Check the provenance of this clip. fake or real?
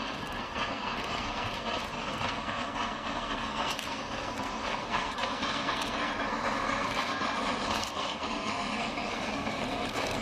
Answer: fake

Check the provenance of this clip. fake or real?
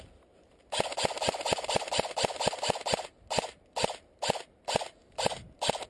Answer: real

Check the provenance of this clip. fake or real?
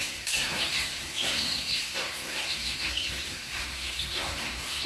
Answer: fake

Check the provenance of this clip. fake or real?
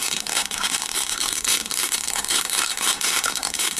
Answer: fake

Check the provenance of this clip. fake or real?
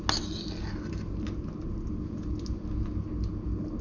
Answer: real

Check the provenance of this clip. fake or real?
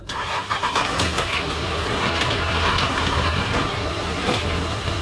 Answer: fake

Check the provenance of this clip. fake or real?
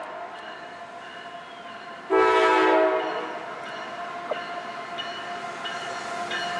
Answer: real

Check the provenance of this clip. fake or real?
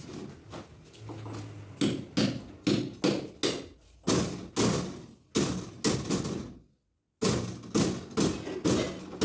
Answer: real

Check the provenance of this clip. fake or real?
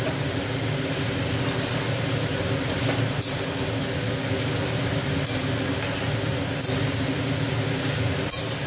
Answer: real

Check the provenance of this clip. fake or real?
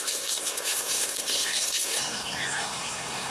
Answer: fake